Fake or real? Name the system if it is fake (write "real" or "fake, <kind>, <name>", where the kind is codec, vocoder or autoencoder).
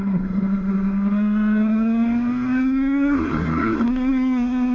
fake, codec, SNAC